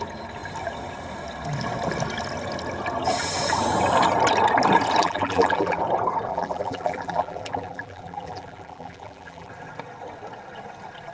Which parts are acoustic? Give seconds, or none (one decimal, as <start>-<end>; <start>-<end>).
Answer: 0.0-5.0; 5.8-6.3; 9.5-11.1